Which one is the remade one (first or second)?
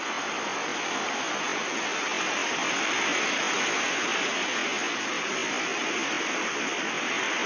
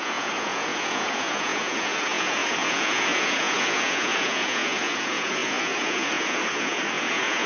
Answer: second